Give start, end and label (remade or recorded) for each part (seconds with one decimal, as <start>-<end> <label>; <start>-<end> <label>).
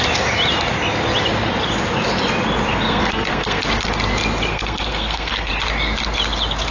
0.0-2.7 recorded; 2.7-3.6 remade; 3.6-4.5 recorded; 4.5-5.5 remade; 5.5-6.7 recorded